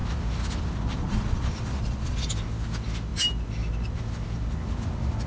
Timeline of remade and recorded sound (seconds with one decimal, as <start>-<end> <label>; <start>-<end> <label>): 0.0-1.0 recorded; 1.0-2.3 remade; 2.3-5.3 recorded